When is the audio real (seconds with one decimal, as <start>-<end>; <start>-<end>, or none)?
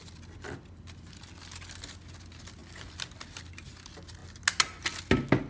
0.0-5.5